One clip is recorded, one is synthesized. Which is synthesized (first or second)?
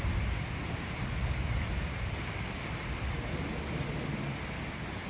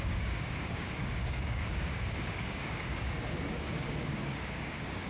second